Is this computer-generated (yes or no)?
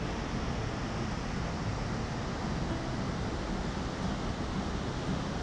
no